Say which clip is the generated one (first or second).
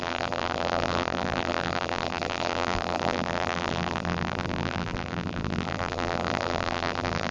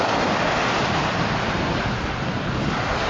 first